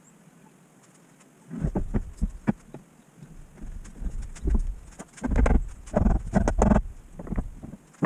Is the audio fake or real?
real